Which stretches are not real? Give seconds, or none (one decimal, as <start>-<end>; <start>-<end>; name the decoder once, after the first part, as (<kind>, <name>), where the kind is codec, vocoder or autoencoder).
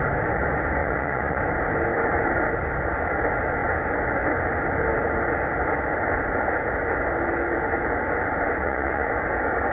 0.8-1.4 (vocoder, Vocos); 8.6-9.1